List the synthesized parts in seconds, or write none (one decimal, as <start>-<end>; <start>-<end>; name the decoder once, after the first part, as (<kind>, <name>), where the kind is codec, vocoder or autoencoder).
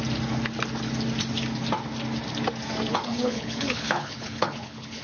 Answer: 2.9-5.0 (codec, HILCodec)